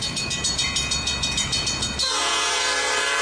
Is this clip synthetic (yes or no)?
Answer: yes